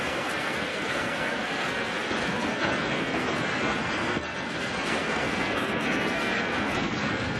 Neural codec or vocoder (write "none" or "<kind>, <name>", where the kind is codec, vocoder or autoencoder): codec, SNAC